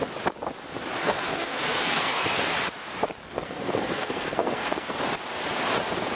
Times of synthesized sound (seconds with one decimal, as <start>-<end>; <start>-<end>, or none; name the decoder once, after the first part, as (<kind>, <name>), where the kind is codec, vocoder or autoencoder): 1.0-2.4 (codec, SNAC); 3.2-5.0